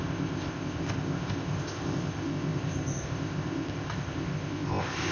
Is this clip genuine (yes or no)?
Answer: no